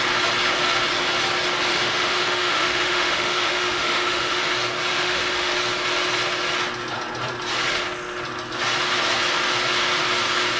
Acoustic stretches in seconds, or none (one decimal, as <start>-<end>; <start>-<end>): 0.0-1.7; 4.4-4.9; 5.5-10.6